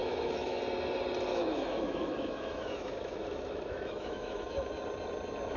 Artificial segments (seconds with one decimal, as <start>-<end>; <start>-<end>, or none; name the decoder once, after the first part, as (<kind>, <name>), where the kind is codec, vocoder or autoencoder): 0.0-0.6 (autoencoder, DAC-VAE); 1.3-4.7